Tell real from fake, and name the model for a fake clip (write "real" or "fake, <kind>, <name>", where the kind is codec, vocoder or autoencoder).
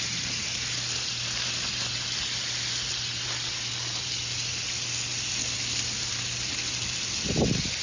real